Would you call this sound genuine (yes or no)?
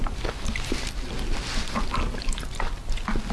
yes